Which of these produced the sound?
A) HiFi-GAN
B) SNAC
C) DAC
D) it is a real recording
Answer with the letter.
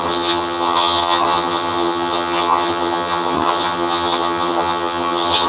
A